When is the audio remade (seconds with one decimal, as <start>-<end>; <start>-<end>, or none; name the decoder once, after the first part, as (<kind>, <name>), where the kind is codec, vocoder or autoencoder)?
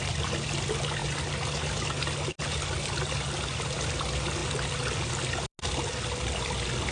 none